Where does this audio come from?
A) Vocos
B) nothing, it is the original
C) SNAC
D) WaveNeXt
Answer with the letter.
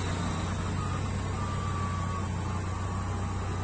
B